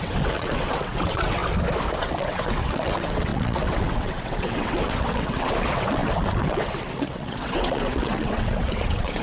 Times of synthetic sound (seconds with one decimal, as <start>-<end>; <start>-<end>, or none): 0.0-1.4; 2.0-9.2

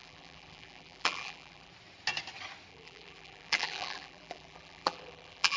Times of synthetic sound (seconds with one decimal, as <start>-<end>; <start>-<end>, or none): 0.0-1.7; 2.7-5.6